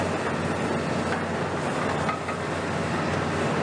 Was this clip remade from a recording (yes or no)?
no